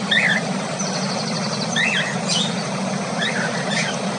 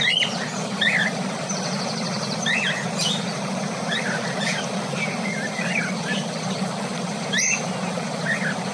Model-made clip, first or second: second